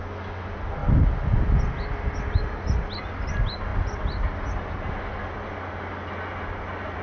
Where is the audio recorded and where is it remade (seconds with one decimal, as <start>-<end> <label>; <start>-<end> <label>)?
0.0-7.0 recorded